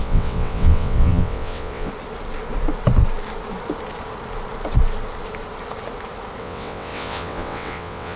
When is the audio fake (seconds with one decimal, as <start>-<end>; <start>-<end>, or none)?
0.0-1.9; 6.4-8.2

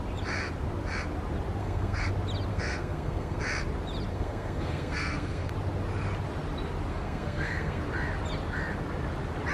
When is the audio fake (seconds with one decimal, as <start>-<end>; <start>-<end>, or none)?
1.6-2.1; 2.5-3.4; 4.1-5.5; 6.9-7.8

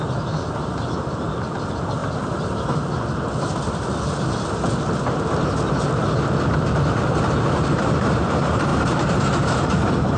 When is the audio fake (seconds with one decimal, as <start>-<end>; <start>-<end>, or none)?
0.0-2.0; 6.7-10.2

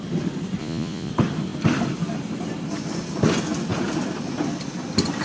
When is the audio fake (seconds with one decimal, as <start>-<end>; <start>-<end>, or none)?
0.6-1.1

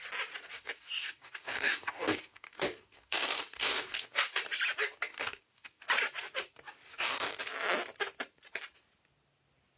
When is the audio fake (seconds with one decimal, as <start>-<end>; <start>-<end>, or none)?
0.5-4.4; 5.1-5.8; 6.9-7.4

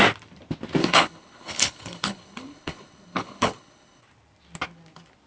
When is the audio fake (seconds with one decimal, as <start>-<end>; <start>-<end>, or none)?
0.8-4.0